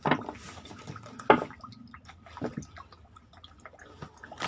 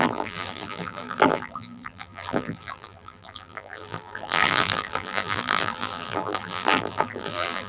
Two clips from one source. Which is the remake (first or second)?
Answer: second